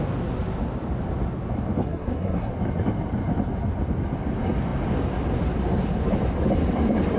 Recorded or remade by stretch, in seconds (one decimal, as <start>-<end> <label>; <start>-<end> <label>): 0.0-1.8 recorded; 1.8-2.5 remade; 2.5-7.2 recorded